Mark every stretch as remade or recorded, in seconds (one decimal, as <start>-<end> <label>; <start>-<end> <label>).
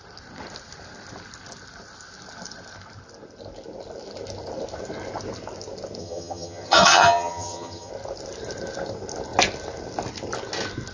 0.0-6.0 recorded; 6.0-7.9 remade; 7.9-10.9 recorded